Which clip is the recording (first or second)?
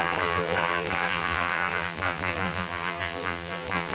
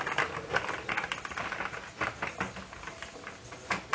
second